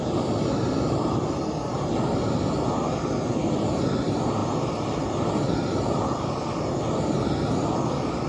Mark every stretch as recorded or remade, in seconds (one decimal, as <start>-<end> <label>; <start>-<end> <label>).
0.0-8.3 recorded